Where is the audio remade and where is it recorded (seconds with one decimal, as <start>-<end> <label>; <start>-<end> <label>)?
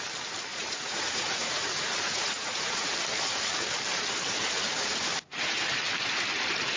0.0-0.5 recorded; 0.5-2.9 remade; 2.9-5.3 recorded; 5.3-5.8 remade; 5.8-6.8 recorded